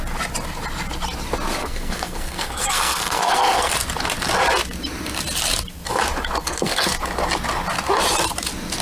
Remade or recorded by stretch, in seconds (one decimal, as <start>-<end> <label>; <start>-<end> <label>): 0.0-1.6 recorded; 1.6-3.7 remade; 3.7-6.4 recorded; 6.4-6.9 remade; 6.9-8.8 recorded